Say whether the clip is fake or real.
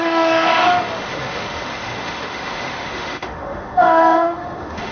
fake